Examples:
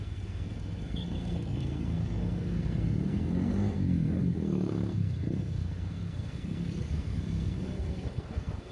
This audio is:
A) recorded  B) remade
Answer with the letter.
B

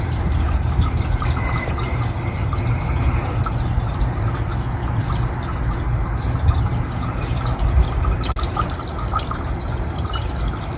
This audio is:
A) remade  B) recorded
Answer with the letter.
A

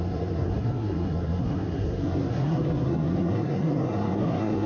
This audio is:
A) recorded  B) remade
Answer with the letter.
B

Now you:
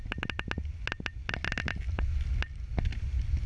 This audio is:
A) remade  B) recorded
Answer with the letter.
B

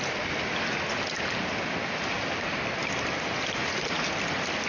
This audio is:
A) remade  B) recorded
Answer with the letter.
B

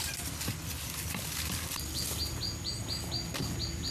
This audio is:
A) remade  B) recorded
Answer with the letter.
B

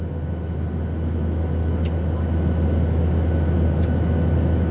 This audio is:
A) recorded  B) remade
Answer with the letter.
A